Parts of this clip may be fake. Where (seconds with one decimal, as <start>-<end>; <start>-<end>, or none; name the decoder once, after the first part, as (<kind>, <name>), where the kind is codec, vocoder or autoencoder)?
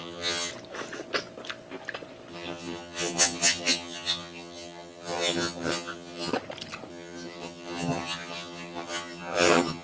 0.0-0.5 (vocoder, HiFi-GAN); 2.3-6.3; 6.9-9.8